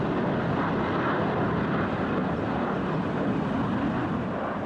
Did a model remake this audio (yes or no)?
yes